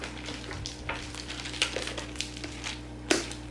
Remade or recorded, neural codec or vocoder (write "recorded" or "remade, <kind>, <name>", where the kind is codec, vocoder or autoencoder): recorded